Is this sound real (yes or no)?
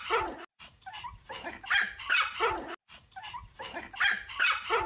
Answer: yes